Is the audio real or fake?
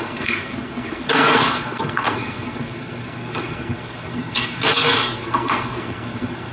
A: fake